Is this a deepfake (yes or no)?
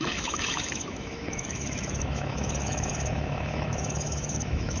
yes